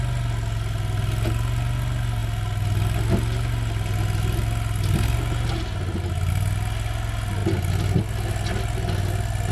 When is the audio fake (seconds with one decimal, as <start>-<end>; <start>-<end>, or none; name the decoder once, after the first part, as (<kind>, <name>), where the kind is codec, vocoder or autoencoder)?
none